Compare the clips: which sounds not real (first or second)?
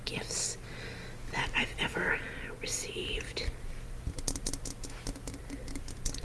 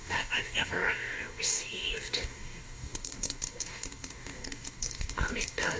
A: second